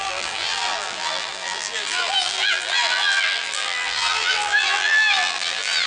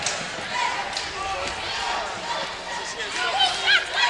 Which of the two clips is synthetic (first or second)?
first